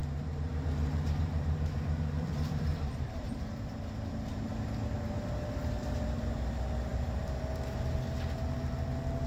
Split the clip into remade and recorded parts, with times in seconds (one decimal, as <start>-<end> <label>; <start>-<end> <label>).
0.0-4.5 remade; 4.5-9.3 recorded